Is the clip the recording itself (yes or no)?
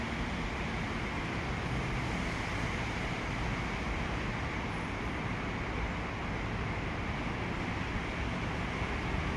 yes